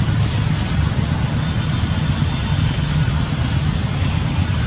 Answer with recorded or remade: recorded